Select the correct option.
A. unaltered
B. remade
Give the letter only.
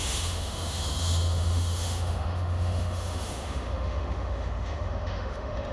B